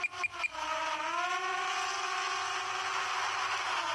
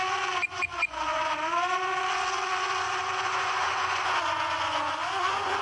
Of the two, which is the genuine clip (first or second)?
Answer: first